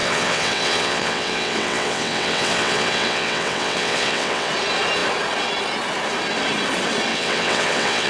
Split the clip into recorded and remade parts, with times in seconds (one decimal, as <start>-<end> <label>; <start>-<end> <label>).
0.0-4.5 remade; 4.5-7.1 recorded; 7.1-8.1 remade